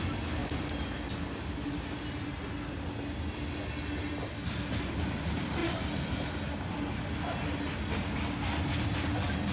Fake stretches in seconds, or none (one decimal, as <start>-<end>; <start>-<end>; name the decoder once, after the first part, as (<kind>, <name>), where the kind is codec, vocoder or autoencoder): none